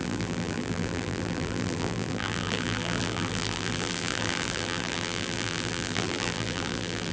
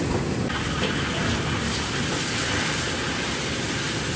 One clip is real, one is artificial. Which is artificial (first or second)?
first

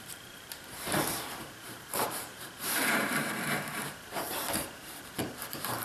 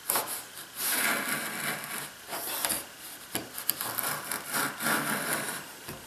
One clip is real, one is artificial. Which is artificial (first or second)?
first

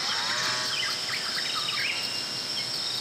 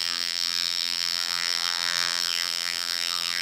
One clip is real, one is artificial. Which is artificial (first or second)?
second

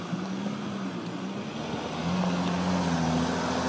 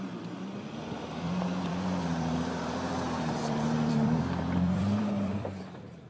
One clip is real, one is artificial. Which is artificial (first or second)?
second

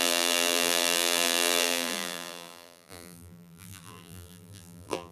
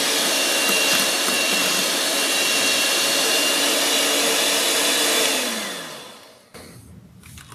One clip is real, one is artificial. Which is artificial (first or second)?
first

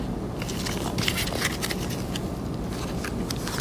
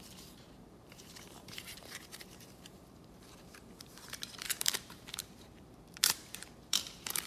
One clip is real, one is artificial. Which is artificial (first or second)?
second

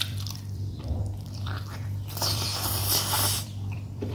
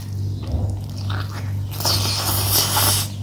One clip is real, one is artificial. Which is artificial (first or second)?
first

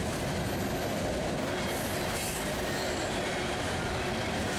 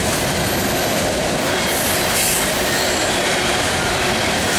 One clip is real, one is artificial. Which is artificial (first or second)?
second